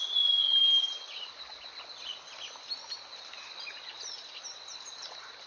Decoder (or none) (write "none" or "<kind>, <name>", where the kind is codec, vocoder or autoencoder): none